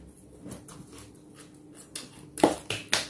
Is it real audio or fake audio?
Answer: real